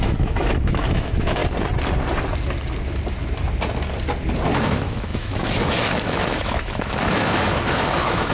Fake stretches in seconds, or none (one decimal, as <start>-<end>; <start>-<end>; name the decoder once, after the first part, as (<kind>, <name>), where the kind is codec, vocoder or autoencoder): 0.0-1.4 (autoencoder, DAC-VAE); 4.6-8.3